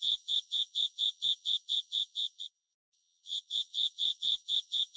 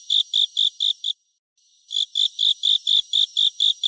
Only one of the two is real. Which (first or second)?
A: second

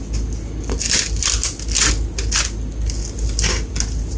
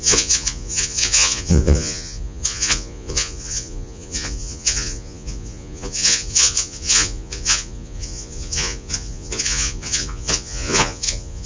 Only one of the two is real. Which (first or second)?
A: first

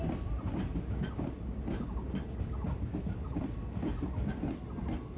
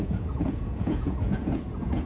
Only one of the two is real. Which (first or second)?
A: first